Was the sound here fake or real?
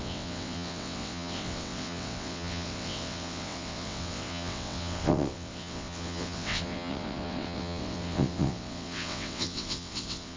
fake